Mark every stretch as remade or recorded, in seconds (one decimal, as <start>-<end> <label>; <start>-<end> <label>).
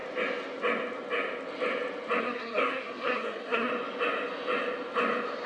0.0-2.2 recorded; 2.2-3.7 remade; 3.7-5.5 recorded